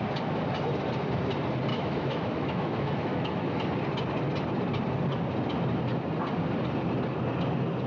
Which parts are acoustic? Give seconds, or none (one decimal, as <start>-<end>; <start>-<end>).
0.0-1.7; 3.6-7.9